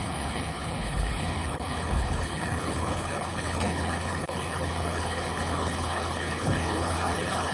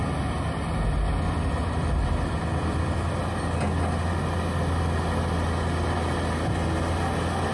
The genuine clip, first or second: second